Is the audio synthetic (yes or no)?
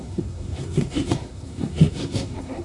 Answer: yes